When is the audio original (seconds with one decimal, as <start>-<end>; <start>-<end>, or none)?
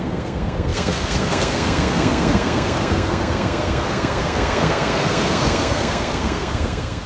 none